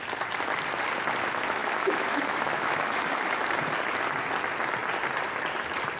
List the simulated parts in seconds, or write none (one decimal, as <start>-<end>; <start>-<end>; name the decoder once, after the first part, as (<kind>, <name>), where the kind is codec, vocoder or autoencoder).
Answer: 1.6-3.4 (autoencoder, DAC-VAE)